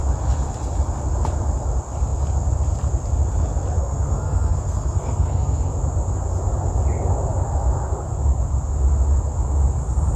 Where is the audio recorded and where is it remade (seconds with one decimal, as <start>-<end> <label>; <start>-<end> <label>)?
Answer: 0.0-3.8 recorded; 3.8-5.7 remade; 5.7-10.2 recorded